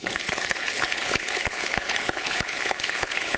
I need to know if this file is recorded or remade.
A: remade